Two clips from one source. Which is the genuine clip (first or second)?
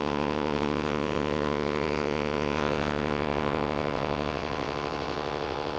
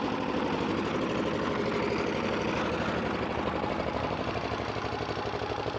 second